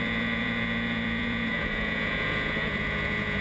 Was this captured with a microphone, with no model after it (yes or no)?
no